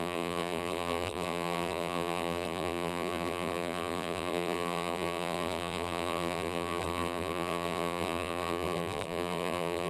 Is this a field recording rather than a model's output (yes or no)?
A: no